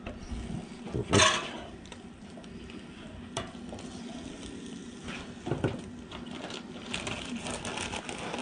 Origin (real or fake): real